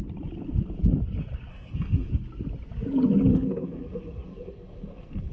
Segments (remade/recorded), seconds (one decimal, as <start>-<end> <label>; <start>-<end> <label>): 0.0-1.5 recorded; 1.5-2.1 remade; 2.1-3.3 recorded; 3.3-5.3 remade